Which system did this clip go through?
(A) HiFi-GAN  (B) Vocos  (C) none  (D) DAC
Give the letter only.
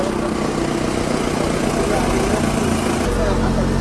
C